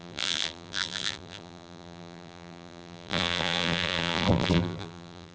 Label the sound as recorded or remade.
remade